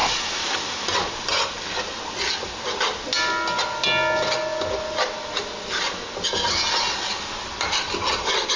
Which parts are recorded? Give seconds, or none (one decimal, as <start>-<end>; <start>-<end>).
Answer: 0.0-8.6